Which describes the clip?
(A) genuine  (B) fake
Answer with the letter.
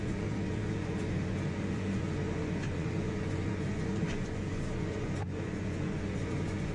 B